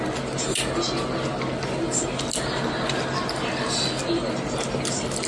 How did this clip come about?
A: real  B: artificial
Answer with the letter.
A